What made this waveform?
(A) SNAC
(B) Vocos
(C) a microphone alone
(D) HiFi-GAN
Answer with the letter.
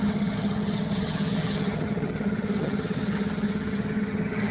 D